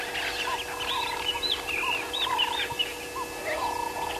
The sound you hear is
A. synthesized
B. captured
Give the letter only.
B